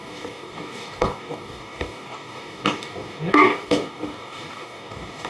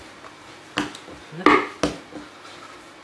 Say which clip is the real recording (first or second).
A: second